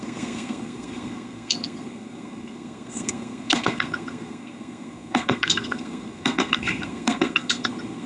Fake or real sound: fake